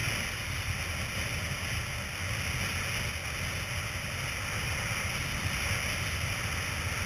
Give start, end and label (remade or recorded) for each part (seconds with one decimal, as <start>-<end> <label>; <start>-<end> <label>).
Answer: 0.0-7.1 recorded